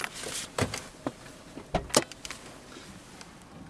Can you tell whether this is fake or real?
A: real